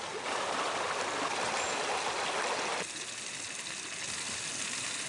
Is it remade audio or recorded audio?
recorded